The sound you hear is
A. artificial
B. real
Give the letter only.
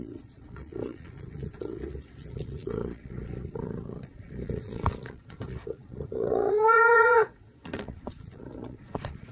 A